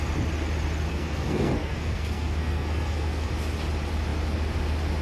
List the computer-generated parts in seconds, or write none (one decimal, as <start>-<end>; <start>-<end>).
0.9-3.3